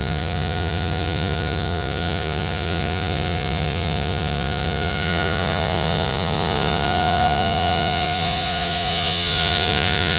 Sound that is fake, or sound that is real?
fake